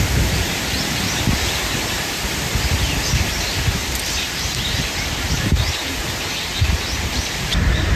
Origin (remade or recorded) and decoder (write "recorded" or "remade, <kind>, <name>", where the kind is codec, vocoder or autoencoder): recorded